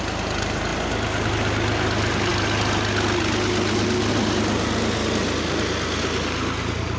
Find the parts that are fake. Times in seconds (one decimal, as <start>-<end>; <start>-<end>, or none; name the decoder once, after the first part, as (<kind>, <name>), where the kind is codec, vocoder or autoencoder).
none